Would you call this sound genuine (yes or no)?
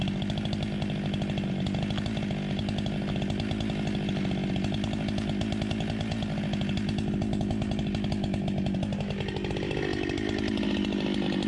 yes